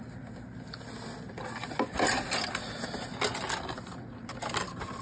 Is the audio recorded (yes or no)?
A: yes